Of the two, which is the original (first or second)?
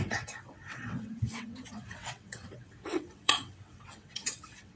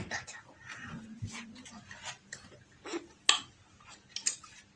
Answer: second